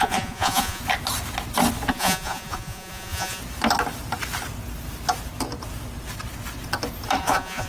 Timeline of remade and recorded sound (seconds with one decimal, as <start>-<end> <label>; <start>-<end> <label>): 0.0-0.8 remade; 0.8-1.9 recorded; 1.9-3.4 remade; 3.4-7.2 recorded; 7.2-7.7 remade